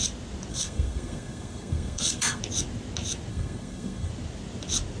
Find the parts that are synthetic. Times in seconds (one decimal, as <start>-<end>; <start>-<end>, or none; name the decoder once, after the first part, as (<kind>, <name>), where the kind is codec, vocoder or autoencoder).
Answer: 0.5-2.4 (codec, SNAC); 3.3-4.1